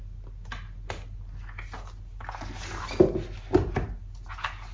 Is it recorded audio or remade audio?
recorded